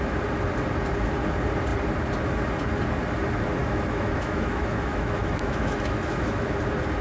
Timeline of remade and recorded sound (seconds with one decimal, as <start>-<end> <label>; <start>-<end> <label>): 0.0-3.6 recorded; 3.6-6.5 remade; 6.5-7.0 recorded